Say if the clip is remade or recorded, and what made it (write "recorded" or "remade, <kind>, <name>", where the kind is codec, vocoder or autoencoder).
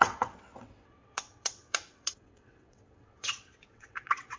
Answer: remade, vocoder, WaveNeXt